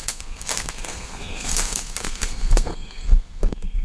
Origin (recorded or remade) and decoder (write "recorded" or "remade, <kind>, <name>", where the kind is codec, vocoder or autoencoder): remade, codec, SNAC